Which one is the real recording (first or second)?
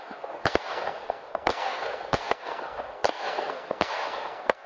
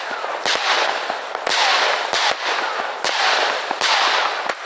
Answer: second